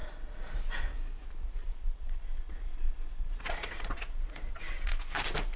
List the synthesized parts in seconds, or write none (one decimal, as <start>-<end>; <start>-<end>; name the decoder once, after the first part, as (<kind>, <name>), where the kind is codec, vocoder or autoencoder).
1.6-5.0 (vocoder, Vocos)